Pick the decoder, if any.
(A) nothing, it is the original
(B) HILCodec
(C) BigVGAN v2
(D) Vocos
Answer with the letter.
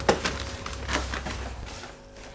A